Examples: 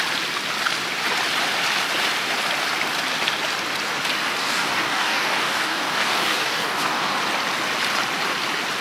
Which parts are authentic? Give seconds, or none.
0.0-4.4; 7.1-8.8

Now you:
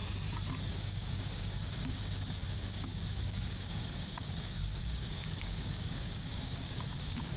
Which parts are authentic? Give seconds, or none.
0.0-0.7

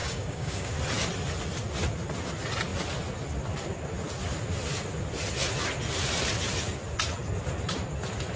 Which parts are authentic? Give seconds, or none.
0.7-8.4

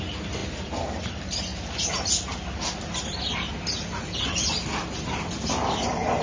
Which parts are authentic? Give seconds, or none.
0.0-6.2